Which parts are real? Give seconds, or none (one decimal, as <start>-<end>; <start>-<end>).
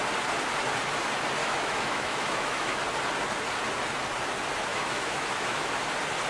0.0-1.4; 2.8-4.7; 5.7-6.3